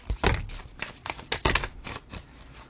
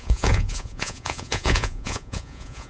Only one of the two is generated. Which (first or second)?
second